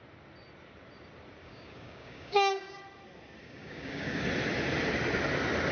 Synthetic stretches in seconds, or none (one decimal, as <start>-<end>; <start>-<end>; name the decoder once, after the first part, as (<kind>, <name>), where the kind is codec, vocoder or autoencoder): 1.4-2.7 (codec, DAC); 3.4-4.2